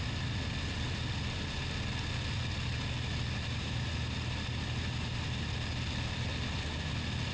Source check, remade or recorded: recorded